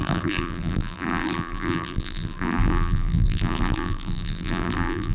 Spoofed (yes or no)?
yes